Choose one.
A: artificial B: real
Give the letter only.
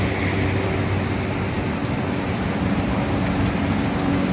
B